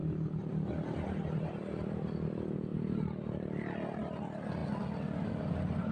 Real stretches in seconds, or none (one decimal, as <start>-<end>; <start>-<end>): 0.0-5.9